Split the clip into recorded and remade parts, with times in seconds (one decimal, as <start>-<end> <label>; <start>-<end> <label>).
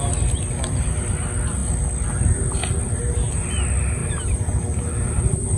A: 0.0-4.0 recorded; 4.0-5.6 remade